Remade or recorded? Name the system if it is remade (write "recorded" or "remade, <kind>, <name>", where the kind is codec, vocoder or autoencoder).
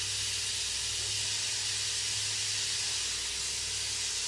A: recorded